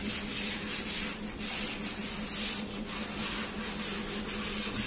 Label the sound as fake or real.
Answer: real